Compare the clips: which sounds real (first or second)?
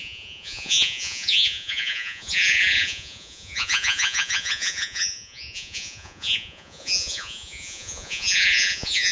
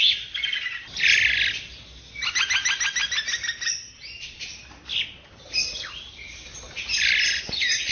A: second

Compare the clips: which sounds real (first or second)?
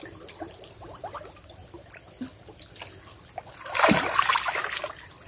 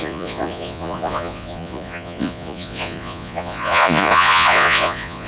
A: first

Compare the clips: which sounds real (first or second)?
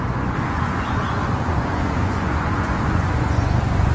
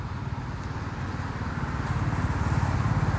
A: second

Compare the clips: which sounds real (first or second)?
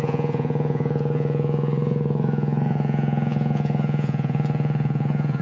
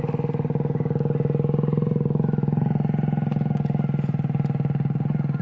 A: second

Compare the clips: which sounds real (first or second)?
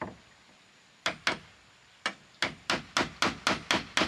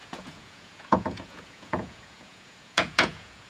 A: first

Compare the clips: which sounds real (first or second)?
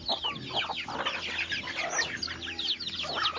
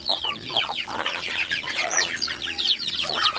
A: first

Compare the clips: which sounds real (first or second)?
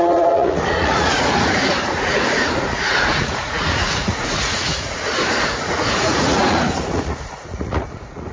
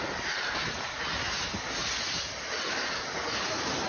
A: second